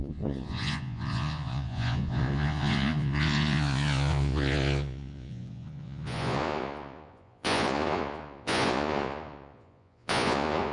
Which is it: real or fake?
fake